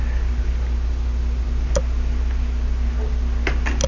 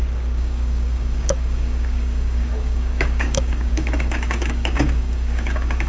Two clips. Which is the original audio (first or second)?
first